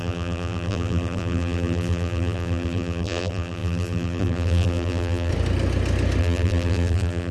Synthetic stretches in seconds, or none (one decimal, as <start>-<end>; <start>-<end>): 0.0-5.3; 6.2-7.3